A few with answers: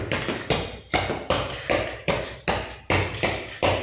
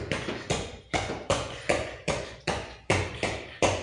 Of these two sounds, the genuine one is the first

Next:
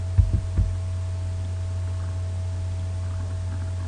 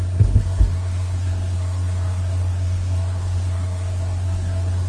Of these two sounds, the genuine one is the first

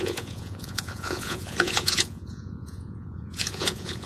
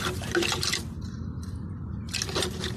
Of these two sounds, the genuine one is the second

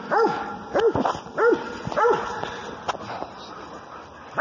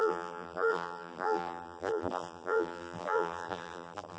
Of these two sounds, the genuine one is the first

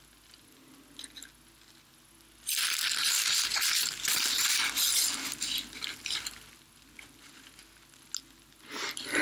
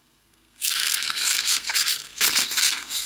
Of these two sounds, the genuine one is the first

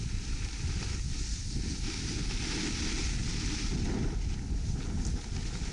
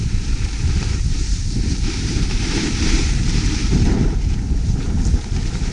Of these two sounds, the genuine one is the first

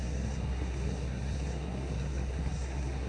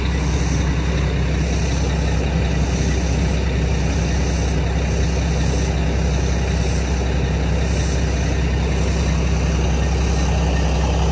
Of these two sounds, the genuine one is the second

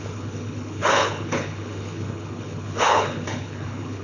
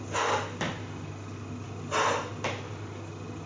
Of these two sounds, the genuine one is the second